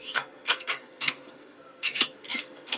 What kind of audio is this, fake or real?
fake